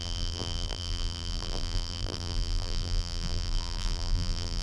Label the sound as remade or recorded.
remade